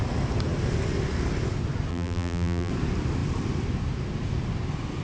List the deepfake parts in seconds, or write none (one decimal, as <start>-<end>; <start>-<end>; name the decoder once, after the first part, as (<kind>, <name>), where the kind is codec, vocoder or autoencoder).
1.9-2.7 (vocoder, BigVGAN v2)